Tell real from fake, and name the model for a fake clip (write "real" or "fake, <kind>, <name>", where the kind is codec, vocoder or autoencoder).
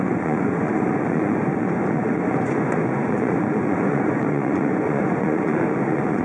fake, vocoder, Vocos